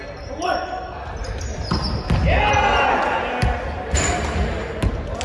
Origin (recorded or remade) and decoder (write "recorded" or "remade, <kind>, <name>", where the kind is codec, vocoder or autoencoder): recorded